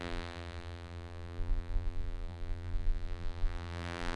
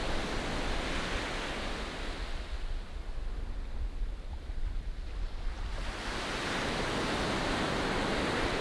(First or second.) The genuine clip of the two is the second